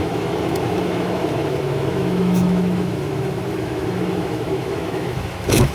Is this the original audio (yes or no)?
no